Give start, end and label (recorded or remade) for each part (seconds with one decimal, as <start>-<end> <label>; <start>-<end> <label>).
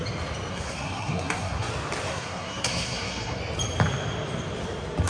0.0-0.5 recorded; 0.5-1.7 remade; 1.7-2.1 recorded; 2.1-3.4 remade; 3.4-5.1 recorded